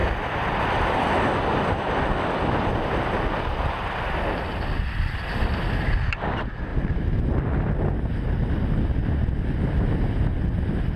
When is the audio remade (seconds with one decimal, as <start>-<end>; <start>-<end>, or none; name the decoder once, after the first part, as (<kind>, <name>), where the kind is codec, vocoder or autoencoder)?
none

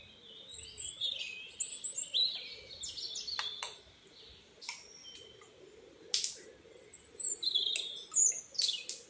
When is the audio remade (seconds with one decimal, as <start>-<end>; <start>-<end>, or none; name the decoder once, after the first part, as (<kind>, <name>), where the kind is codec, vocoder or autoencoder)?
none

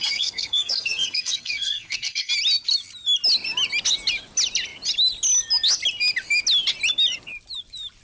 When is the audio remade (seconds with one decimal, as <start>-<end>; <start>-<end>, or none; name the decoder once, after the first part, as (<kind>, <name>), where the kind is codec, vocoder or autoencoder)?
0.0-2.3 (codec, SNAC)

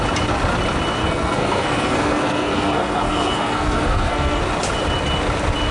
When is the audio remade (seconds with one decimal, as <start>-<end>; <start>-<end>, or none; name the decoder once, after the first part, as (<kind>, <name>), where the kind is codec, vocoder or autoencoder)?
1.0-4.4 (codec, SNAC)

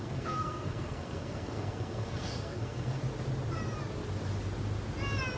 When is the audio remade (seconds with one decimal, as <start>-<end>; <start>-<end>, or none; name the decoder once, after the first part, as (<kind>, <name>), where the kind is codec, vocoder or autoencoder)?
0.0-3.0 (codec, SNAC)

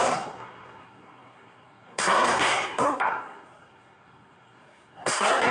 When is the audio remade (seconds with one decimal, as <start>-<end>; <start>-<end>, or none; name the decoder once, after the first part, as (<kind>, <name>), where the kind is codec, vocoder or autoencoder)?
0.0-5.5 (codec, SNAC)

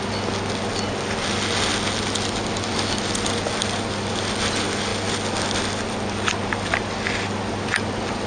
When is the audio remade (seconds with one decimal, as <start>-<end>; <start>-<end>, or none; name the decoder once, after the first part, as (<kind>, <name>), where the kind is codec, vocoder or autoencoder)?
none